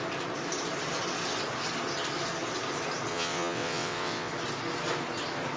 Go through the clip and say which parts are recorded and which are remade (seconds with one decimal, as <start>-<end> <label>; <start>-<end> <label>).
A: 0.0-3.1 recorded; 3.1-4.3 remade; 4.3-5.6 recorded